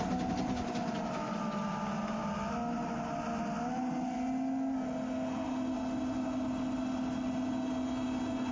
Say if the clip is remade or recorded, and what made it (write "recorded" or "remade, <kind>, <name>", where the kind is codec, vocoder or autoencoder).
recorded